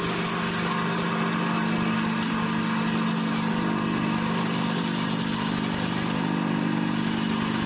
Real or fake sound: real